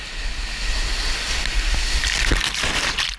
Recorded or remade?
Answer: recorded